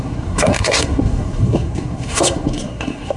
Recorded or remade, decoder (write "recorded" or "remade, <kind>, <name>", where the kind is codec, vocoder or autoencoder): remade, codec, SNAC